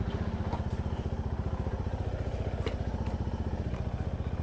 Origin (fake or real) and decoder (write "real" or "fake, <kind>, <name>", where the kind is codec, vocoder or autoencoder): real